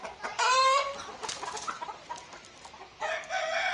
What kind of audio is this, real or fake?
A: fake